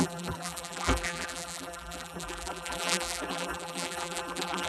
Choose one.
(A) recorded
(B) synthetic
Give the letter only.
B